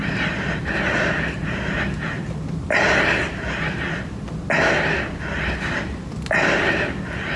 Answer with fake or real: real